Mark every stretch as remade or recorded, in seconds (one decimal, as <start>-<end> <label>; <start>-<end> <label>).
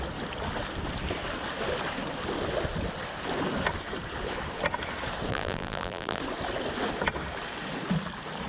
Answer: 0.0-5.3 recorded; 5.3-6.2 remade; 6.2-8.5 recorded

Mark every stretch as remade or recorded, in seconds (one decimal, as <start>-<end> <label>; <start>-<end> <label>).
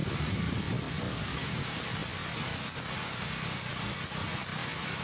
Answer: 0.0-1.1 recorded; 1.1-1.8 remade; 1.8-3.0 recorded; 3.0-3.7 remade; 3.7-5.0 recorded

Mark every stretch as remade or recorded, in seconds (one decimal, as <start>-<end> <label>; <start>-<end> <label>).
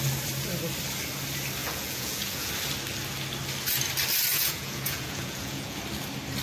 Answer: 0.0-1.6 recorded; 1.6-2.5 remade; 2.5-4.3 recorded; 4.3-5.8 remade; 5.8-6.4 recorded